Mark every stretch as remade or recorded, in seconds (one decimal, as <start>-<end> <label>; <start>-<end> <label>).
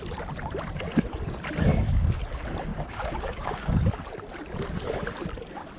0.0-1.7 recorded; 1.7-2.2 remade; 2.2-2.7 recorded; 2.7-3.9 remade; 3.9-5.8 recorded